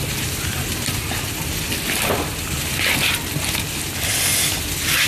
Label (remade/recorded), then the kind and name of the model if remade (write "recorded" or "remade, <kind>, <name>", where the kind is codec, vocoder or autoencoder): recorded